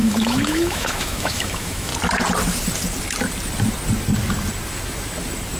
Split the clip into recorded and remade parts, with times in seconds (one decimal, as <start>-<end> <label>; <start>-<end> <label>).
0.0-1.9 remade; 1.9-5.6 recorded